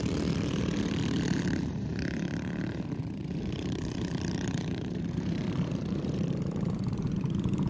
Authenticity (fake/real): fake